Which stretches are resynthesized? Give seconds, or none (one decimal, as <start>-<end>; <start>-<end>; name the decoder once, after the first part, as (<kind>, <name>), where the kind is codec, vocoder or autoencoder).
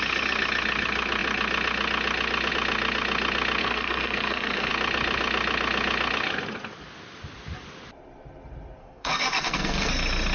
3.6-4.7 (codec, SNAC); 8.8-9.9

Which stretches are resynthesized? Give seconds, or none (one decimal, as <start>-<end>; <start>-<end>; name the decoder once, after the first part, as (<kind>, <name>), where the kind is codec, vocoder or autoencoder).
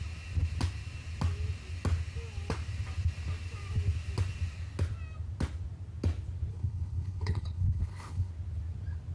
6.5-8.3 (codec, HILCodec)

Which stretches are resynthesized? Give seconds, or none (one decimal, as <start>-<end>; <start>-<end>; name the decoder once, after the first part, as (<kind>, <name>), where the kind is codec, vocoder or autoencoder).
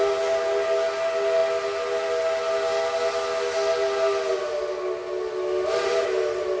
none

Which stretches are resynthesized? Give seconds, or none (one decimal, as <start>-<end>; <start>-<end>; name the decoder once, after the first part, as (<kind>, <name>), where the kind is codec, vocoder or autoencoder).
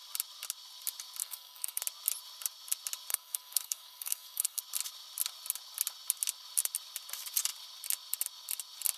1.2-1.8 (codec, SNAC); 3.1-4.6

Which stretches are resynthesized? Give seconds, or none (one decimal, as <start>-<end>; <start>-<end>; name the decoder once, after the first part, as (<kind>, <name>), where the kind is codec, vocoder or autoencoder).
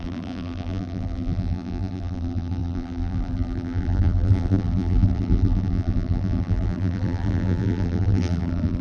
0.0-8.8 (vocoder, BigVGAN v2)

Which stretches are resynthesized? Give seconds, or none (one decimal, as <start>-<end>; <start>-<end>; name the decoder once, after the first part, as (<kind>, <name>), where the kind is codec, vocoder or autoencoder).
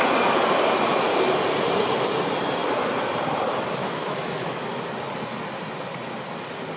3.8-4.8 (autoencoder, DAC-VAE)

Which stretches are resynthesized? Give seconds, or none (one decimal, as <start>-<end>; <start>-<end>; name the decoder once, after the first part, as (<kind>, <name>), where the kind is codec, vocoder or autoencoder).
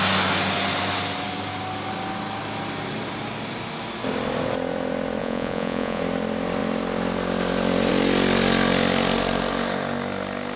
5.2-6.0 (vocoder, Vocos)